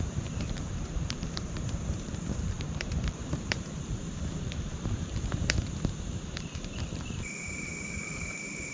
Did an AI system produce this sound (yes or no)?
yes